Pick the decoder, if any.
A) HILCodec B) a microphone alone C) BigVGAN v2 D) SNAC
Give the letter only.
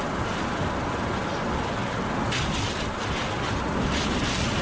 B